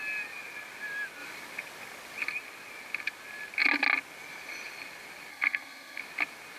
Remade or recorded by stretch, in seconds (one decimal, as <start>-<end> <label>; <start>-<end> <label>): 0.0-5.3 recorded; 5.3-6.0 remade; 6.0-6.6 recorded